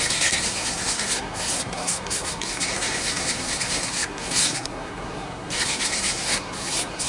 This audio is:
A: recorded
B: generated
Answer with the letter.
B